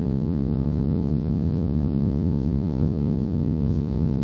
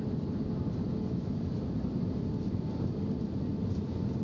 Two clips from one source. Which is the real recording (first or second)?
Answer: second